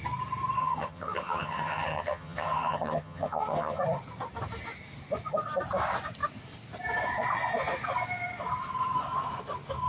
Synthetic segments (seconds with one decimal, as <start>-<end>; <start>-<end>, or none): 0.6-3.8